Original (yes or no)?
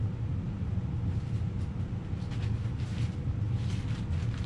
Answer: yes